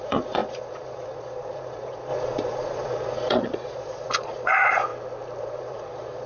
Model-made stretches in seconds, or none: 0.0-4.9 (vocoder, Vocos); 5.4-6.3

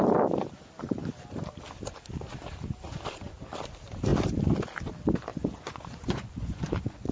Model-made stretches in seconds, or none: 5.3-7.1 (vocoder, Vocos)

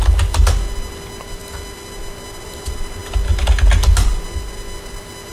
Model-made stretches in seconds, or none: none

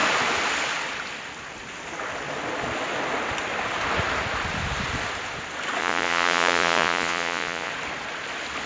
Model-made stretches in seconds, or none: 5.8-7.7 (vocoder, Vocos)

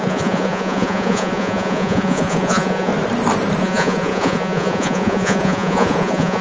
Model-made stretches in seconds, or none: 0.0-2.9 (vocoder, Vocos); 3.6-6.4

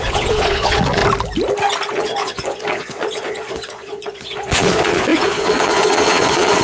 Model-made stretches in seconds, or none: 0.0-1.0 (vocoder, Vocos); 1.9-6.6